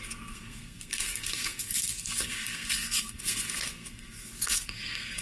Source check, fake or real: fake